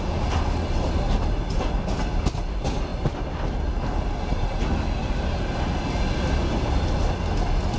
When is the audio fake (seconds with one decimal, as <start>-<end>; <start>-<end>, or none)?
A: none